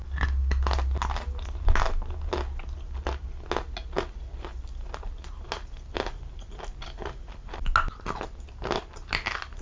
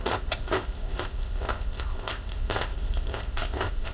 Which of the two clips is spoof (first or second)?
second